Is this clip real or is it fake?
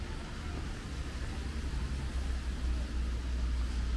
real